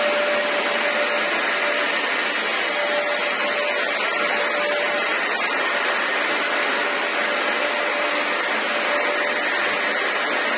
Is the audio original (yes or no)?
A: yes